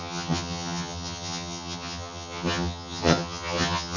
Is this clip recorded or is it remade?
remade